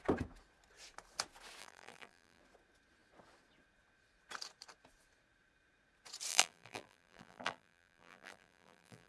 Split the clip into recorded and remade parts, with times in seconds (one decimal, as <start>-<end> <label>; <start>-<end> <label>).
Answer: 0.0-1.6 recorded; 1.6-2.4 remade; 2.4-6.3 recorded; 6.3-9.1 remade